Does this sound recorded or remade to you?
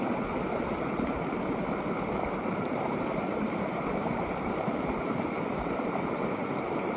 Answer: remade